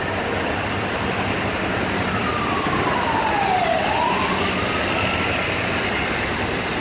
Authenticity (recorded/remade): recorded